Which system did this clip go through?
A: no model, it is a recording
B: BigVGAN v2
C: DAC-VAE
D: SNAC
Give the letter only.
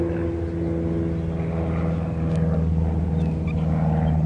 A